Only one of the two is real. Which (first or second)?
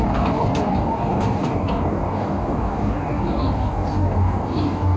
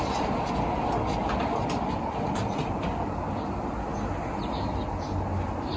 second